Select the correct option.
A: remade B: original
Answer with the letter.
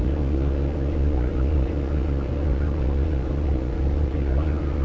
A